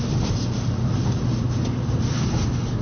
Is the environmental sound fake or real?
real